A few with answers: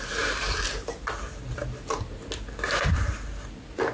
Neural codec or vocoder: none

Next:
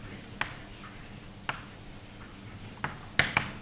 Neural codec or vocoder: none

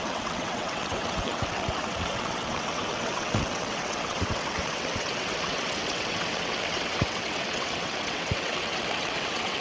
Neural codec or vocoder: vocoder, WaveNeXt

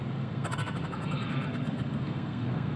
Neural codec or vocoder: codec, SNAC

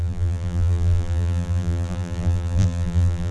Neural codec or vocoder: vocoder, BigVGAN v2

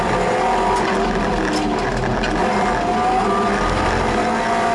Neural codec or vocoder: none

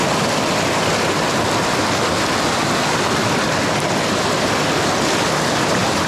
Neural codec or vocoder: none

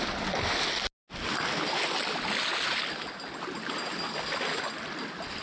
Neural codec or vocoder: none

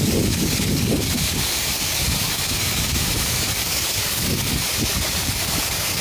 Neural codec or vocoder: codec, DAC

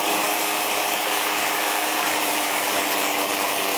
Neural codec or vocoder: codec, DAC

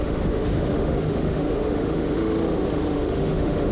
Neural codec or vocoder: autoencoder, DAC-VAE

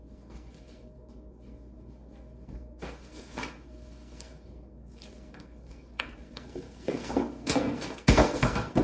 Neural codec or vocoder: codec, SNAC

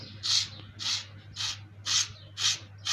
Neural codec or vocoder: none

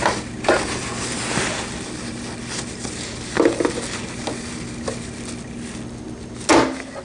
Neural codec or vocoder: none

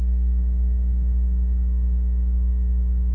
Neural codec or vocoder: none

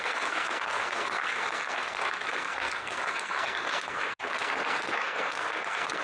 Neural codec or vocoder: codec, SNAC